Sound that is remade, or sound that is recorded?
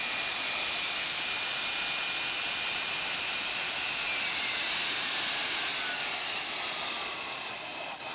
recorded